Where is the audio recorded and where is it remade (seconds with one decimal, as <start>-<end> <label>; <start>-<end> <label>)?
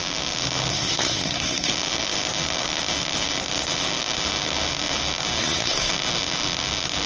0.0-0.7 recorded; 0.7-1.7 remade; 1.7-5.4 recorded; 5.4-5.9 remade; 5.9-7.1 recorded